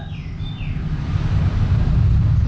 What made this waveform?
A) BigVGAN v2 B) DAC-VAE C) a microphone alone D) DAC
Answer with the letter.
C